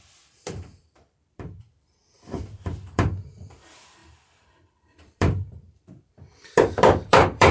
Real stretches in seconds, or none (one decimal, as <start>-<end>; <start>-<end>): none